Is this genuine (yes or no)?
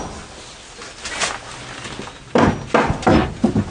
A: yes